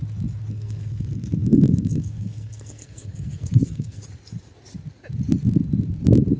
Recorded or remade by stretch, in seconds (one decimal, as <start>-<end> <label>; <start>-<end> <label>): 0.0-0.5 recorded; 0.5-4.0 remade; 4.0-6.4 recorded